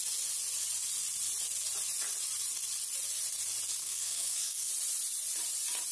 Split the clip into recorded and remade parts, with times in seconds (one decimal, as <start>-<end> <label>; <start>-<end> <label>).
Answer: 0.0-3.8 recorded; 3.8-4.7 remade; 4.7-5.9 recorded